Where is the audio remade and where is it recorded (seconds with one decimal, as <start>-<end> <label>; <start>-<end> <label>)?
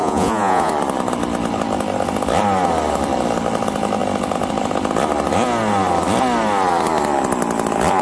0.0-0.7 remade; 0.7-8.0 recorded